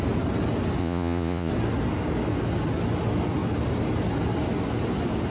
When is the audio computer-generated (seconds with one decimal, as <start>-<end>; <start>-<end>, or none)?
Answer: 0.8-1.5